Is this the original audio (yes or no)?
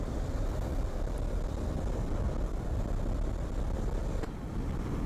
yes